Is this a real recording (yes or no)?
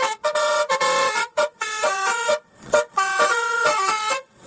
no